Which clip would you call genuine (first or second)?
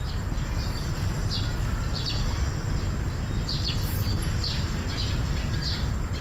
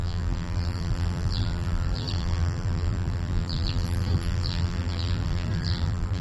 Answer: first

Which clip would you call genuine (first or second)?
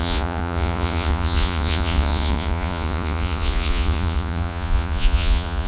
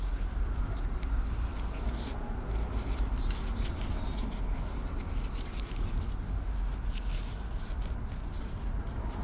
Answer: second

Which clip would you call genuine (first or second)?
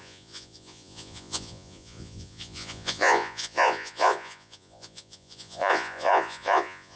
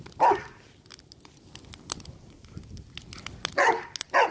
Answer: second